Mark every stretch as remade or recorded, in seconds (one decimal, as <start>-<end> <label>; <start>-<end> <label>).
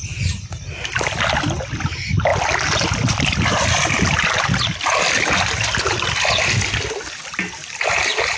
0.0-8.4 recorded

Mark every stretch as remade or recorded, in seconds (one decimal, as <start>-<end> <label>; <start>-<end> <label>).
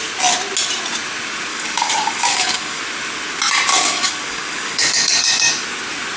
0.0-1.5 recorded; 1.5-2.8 remade; 2.8-3.7 recorded; 3.7-5.5 remade; 5.5-6.2 recorded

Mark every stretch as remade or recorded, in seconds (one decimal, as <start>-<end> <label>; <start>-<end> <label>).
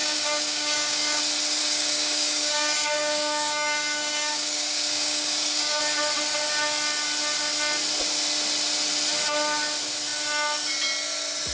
0.0-1.2 remade; 1.2-1.6 recorded; 1.6-5.8 remade; 5.8-11.5 recorded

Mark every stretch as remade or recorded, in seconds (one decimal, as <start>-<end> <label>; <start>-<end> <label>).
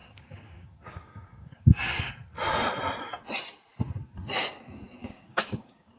0.0-2.1 remade; 2.1-5.0 recorded; 5.0-6.0 remade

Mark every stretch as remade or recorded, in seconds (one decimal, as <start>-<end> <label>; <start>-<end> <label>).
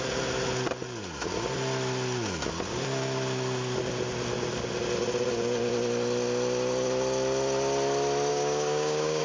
0.0-8.3 recorded; 8.3-9.2 remade